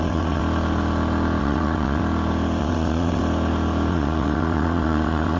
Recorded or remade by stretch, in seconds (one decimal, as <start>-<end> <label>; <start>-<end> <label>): 0.0-0.4 remade; 0.4-1.4 recorded; 1.4-2.0 remade; 2.0-2.6 recorded; 2.6-3.2 remade; 3.2-3.9 recorded; 3.9-5.4 remade